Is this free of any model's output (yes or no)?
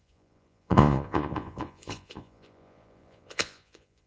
no